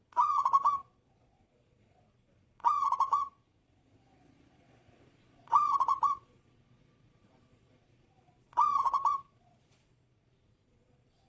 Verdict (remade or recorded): remade